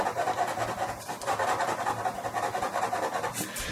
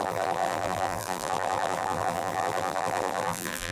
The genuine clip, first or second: first